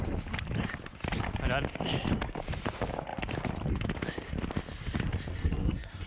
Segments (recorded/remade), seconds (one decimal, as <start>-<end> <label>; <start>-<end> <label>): 0.0-5.3 recorded; 5.3-6.1 remade